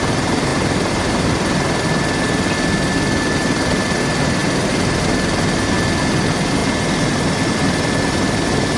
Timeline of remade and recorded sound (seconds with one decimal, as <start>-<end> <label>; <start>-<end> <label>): 0.0-8.8 recorded